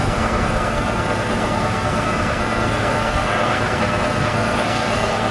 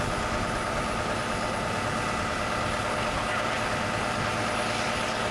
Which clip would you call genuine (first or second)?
second